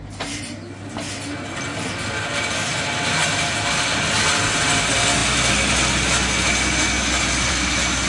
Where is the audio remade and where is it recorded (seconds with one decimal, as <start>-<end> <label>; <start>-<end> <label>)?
0.0-8.1 recorded